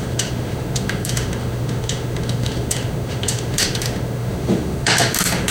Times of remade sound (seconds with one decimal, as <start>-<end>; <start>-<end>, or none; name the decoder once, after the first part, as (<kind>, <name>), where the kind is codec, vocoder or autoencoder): 0.0-5.5 (autoencoder, DAC-VAE)